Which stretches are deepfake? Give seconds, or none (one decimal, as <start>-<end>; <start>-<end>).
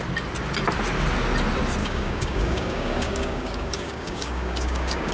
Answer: 1.8-5.1